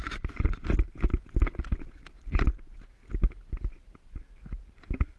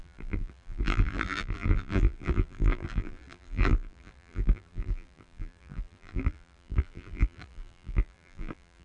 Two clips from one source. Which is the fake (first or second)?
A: second